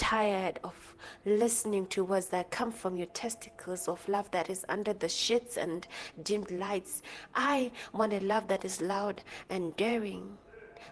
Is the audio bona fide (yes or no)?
no